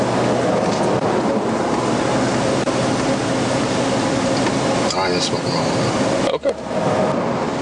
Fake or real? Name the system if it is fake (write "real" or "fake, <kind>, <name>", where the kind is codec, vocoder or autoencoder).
real